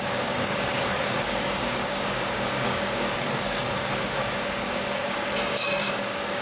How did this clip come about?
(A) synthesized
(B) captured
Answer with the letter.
A